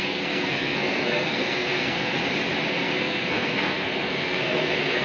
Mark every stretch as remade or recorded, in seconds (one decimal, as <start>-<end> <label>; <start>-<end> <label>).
0.0-2.2 remade; 2.2-2.7 recorded; 2.7-5.0 remade